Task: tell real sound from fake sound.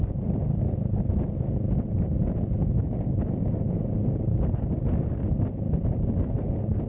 real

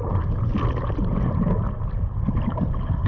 real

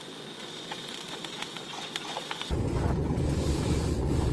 fake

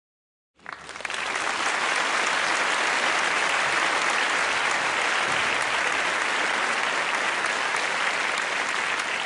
real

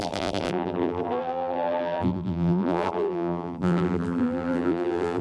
fake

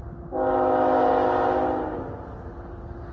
real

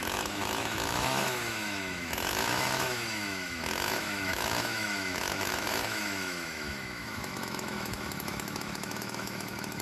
fake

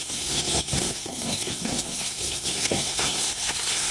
fake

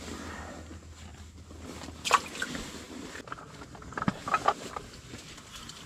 real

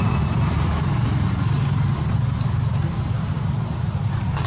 real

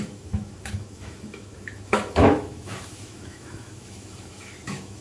fake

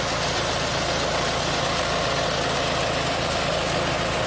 real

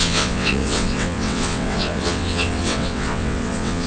fake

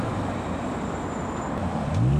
real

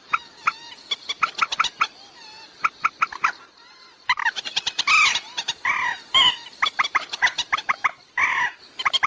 real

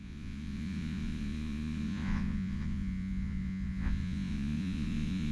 fake